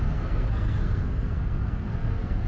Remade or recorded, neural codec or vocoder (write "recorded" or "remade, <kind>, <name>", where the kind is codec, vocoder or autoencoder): remade, codec, SNAC